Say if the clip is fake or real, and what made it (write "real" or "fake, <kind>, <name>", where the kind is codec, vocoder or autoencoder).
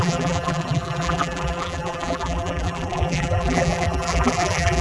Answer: fake, vocoder, BigVGAN v2